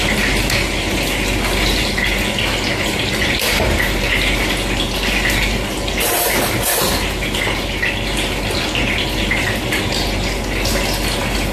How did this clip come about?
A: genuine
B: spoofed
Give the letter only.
A